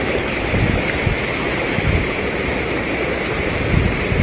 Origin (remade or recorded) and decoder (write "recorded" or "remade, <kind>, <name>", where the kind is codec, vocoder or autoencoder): recorded